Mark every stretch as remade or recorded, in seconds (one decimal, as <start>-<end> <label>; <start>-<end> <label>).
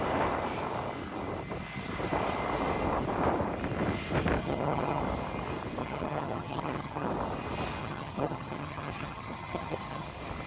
0.0-4.4 recorded; 4.4-5.0 remade; 5.0-5.8 recorded; 5.8-7.1 remade; 7.1-7.8 recorded; 7.8-10.1 remade; 10.1-10.5 recorded